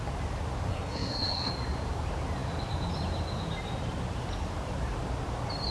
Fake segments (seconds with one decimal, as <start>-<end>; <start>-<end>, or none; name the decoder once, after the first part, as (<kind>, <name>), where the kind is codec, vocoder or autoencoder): 0.7-1.5 (codec, SNAC)